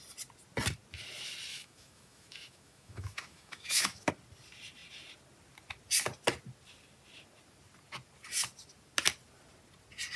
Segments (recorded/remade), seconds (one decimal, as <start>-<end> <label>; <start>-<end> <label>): 0.0-1.5 recorded; 1.5-4.1 remade; 4.1-10.2 recorded